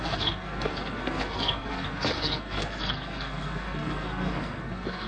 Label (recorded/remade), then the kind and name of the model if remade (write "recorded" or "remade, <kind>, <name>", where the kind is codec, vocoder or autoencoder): remade, codec, SNAC